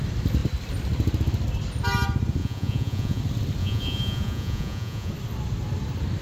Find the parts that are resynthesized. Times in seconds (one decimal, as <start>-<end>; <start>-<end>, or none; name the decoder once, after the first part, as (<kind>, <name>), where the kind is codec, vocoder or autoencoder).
2.4-3.2 (vocoder, Vocos); 3.6-5.1

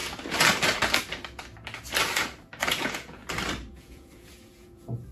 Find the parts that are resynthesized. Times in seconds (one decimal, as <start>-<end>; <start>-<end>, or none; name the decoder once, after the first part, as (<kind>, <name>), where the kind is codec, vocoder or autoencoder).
2.6-3.2 (vocoder, Vocos); 3.7-5.1

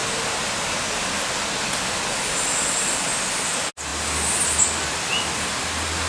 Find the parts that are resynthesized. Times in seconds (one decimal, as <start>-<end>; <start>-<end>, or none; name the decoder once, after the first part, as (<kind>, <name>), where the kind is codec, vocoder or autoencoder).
none

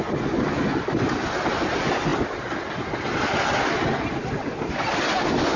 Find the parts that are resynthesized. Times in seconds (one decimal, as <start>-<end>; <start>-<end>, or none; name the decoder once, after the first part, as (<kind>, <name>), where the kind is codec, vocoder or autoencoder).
none

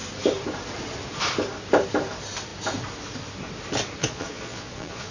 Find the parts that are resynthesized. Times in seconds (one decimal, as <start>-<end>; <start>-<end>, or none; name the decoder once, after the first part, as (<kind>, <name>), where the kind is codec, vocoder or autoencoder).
4.0-5.1 (vocoder, Vocos)

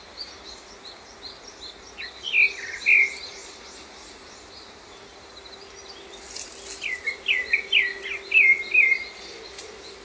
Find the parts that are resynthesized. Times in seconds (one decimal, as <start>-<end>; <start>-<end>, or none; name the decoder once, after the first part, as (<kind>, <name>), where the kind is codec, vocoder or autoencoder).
none

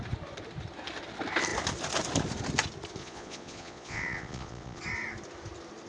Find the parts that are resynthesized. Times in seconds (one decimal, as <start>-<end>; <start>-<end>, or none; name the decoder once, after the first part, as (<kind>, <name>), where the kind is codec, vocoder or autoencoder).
3.0-4.8 (vocoder, Vocos)

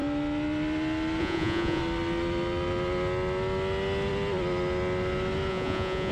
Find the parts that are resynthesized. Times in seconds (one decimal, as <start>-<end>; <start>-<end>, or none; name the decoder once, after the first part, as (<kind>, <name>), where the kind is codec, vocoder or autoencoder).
1.2-1.8 (vocoder, Vocos); 5.5-6.1